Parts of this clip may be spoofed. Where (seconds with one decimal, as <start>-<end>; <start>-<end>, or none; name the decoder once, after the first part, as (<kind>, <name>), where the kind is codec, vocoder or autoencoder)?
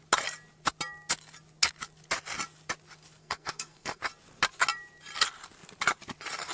3.2-4.0 (codec, SNAC)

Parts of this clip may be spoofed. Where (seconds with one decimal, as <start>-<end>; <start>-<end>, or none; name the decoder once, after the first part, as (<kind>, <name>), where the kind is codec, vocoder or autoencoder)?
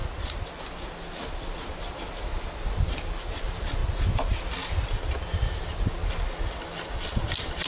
none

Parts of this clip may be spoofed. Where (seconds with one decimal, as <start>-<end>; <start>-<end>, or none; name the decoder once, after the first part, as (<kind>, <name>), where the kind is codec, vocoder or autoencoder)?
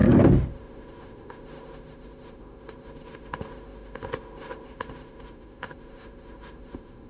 0.5-7.1 (autoencoder, DAC-VAE)